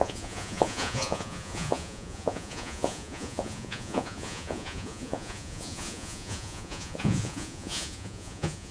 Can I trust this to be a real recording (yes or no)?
no